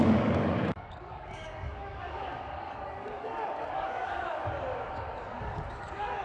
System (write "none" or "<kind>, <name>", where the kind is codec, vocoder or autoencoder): codec, DAC